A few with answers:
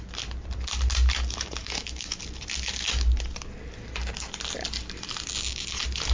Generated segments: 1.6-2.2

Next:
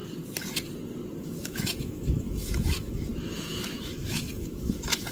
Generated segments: 1.2-5.1